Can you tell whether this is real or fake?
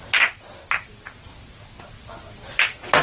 real